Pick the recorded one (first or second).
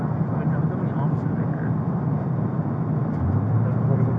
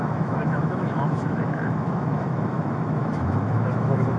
first